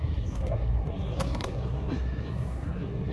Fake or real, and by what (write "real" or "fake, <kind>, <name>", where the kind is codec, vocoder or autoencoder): fake, codec, SNAC